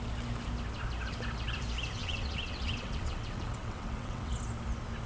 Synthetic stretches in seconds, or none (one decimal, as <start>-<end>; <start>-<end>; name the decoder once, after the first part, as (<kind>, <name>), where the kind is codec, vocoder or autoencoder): 2.0-4.3 (vocoder, WaveNeXt)